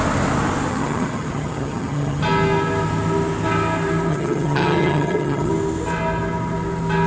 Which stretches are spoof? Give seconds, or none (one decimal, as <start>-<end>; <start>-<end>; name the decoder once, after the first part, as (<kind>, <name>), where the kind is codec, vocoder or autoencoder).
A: 0.7-2.2 (vocoder, HiFi-GAN); 4.1-5.5